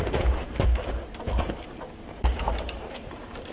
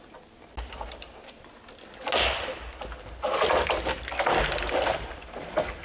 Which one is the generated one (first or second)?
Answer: first